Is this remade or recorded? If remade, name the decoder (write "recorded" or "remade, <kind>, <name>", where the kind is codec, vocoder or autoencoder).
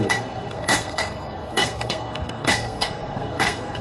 remade, codec, SNAC